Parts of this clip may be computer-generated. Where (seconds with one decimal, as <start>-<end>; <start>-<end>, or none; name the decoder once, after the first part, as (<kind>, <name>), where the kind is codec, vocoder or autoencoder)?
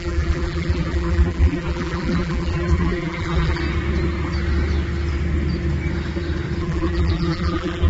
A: 0.0-3.6 (vocoder, BigVGAN v2); 6.6-7.9